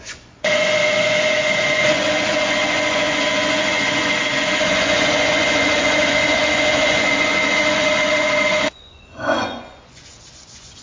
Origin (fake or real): fake